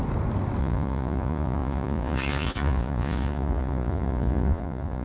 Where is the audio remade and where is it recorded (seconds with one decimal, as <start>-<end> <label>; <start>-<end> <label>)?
0.0-0.6 recorded; 0.6-5.0 remade